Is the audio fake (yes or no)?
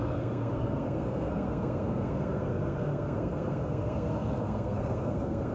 yes